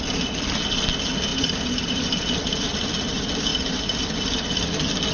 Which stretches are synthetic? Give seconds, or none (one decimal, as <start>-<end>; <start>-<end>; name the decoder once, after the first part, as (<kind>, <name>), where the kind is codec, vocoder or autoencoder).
1.3-2.9 (vocoder, BigVGAN v2)